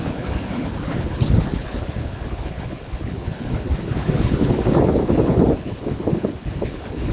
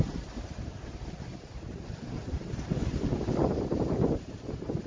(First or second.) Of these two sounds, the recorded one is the second